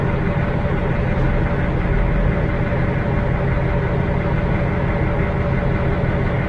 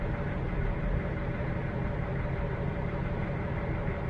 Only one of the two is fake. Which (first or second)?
second